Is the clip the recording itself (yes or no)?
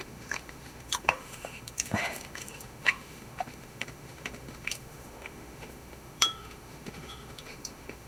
no